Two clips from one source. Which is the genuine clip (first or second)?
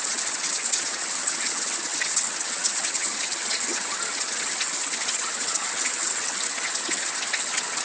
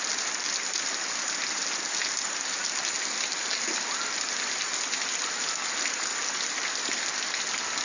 second